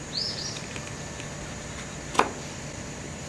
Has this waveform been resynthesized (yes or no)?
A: no